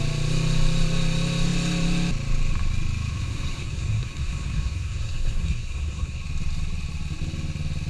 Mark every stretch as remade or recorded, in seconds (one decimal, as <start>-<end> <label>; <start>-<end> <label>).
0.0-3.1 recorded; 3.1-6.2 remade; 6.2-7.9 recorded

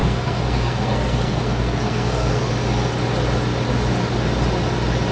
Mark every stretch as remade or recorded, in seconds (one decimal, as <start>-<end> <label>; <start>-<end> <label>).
0.0-2.5 remade; 2.5-5.1 recorded

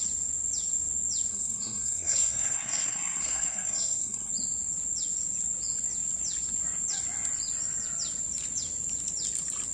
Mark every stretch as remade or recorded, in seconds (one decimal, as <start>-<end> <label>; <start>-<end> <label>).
0.0-1.3 recorded; 1.3-4.3 remade; 4.3-9.7 recorded